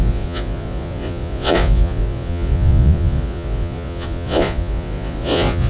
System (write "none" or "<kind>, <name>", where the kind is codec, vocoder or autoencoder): vocoder, Vocos